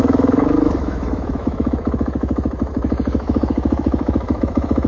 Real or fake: fake